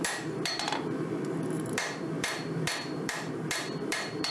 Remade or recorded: remade